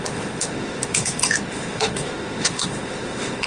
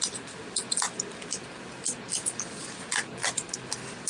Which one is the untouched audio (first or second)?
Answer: second